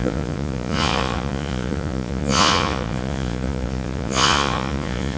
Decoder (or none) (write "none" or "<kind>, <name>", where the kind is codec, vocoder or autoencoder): vocoder, Vocos